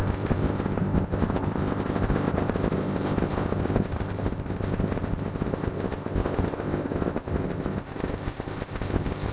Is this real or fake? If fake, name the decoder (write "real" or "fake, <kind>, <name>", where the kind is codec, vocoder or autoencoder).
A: fake, codec, ZipCodec